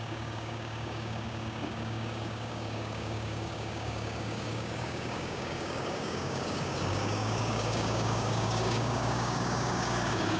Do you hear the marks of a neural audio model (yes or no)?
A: yes